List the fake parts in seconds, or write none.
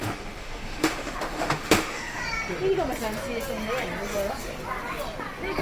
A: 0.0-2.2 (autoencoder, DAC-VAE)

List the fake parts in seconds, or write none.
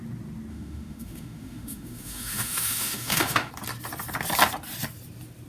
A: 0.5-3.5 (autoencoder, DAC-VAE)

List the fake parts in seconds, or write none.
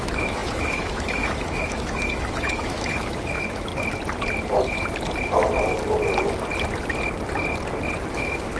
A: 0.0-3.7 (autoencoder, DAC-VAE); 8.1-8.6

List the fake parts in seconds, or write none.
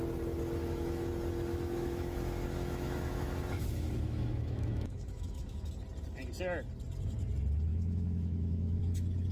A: 0.6-1.1 (autoencoder, DAC-VAE); 1.5-5.7; 7.7-8.8